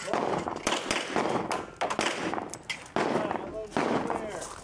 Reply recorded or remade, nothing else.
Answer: recorded